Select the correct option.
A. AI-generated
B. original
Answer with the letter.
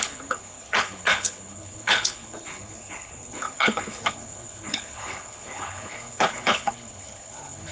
A